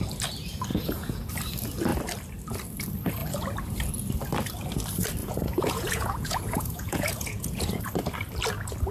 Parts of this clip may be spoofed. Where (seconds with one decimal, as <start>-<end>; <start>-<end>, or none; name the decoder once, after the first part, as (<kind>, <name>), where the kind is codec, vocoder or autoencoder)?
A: 0.7-1.3 (vocoder, Vocos); 5.2-7.8